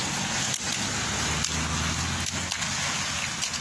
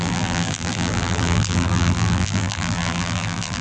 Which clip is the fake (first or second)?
second